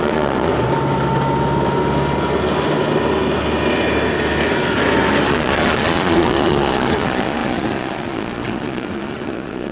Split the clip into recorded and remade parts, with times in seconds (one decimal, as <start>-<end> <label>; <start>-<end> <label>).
0.0-0.5 remade; 0.5-5.3 recorded; 5.3-9.7 remade